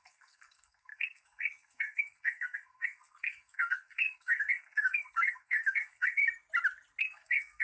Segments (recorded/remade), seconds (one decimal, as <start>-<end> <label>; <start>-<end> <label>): 0.0-6.2 remade; 6.2-7.0 recorded; 7.0-7.6 remade